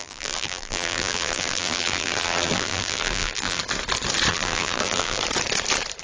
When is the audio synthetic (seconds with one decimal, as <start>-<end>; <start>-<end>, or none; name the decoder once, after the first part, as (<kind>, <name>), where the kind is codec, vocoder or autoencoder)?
0.0-3.6 (vocoder, BigVGAN v2); 4.3-5.2